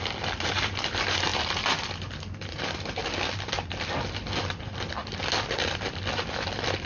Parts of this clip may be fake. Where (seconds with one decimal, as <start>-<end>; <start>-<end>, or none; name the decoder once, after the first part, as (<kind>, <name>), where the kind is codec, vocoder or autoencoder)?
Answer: none

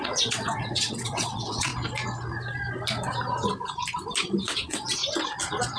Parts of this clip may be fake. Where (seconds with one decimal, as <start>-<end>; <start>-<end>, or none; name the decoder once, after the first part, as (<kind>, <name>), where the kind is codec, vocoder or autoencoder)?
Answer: 0.0-1.7 (vocoder, WaveNeXt); 4.4-5.0

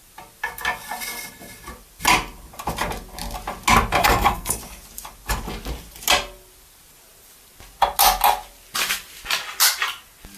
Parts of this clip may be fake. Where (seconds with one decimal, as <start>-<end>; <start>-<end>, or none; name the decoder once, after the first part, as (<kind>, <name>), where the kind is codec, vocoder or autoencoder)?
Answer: 4.0-4.6 (codec, SNAC)

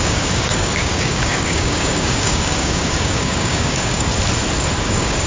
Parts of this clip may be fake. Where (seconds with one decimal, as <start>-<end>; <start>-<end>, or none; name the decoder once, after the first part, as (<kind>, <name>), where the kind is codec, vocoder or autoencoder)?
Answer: 0.0-4.1 (codec, DAC); 4.8-5.3

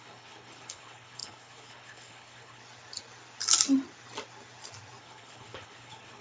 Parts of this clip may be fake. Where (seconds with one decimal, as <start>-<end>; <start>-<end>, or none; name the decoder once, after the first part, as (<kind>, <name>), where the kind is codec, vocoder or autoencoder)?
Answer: 0.0-2.6 (codec, HILCodec); 5.0-6.2